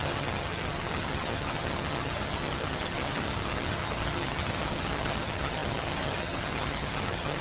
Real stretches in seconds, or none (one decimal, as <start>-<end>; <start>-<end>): none

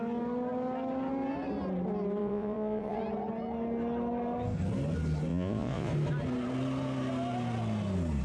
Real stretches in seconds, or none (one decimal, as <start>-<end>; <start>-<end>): 0.0-2.2; 3.0-5.3; 5.9-8.2

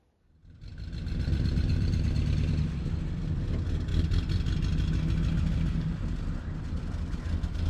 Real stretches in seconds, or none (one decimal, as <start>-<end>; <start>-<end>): 0.0-7.7

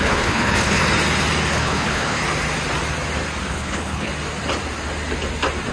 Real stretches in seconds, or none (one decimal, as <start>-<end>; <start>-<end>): 0.8-1.5; 2.2-3.5; 4.1-5.7

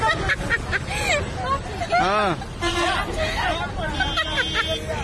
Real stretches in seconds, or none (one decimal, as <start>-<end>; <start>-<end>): 0.0-5.0

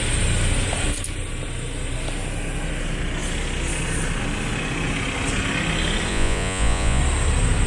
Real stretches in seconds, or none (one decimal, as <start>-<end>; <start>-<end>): 0.0-6.1; 7.0-7.7

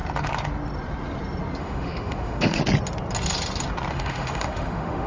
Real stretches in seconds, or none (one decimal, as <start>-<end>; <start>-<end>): 0.0-1.6; 2.6-3.9